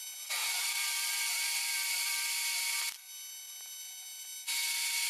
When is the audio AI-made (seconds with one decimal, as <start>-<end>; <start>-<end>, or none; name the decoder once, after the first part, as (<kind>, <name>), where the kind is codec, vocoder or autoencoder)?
none